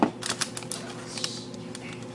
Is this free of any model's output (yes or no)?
yes